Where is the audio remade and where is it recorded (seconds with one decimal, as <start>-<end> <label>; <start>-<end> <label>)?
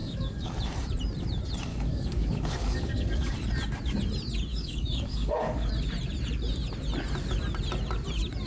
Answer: 0.0-0.6 remade; 0.6-1.7 recorded; 1.7-3.3 remade; 3.3-4.5 recorded; 4.5-5.7 remade; 5.7-8.5 recorded